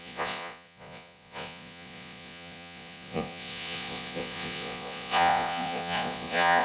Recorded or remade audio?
remade